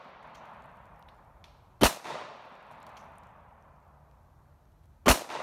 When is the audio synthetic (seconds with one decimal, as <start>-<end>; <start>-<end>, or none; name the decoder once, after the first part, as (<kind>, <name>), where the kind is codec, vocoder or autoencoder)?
none